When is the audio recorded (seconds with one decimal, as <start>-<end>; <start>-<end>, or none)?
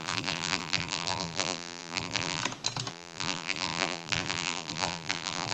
2.4-2.9